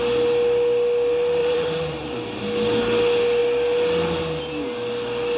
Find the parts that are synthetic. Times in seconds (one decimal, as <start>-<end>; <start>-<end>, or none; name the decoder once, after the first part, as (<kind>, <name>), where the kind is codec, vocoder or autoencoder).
1.4-2.4 (vocoder, BigVGAN v2)